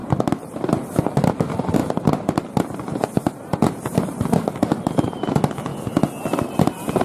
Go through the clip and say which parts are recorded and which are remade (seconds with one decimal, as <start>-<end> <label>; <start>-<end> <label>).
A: 0.0-5.7 remade; 5.7-7.0 recorded